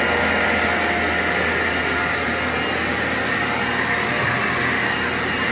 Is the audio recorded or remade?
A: recorded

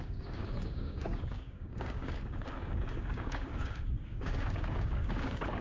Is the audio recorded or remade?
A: remade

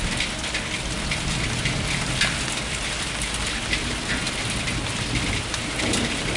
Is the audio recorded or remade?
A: recorded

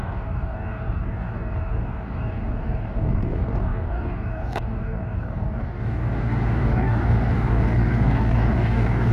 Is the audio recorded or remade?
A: remade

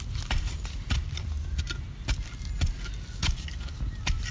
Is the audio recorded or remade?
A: recorded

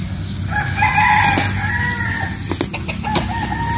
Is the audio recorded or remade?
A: recorded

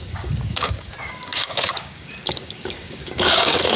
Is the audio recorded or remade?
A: remade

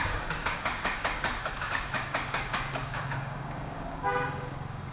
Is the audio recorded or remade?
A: remade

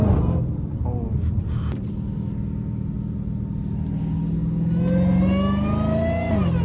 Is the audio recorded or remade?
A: recorded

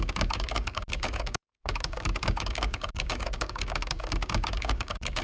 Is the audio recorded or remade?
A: remade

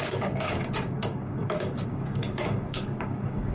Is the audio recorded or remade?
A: remade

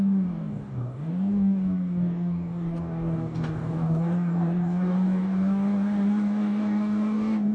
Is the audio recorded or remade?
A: remade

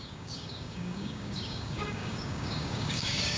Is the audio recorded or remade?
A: remade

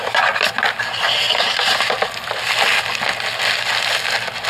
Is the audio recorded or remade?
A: recorded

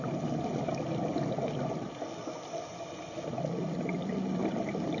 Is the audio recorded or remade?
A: recorded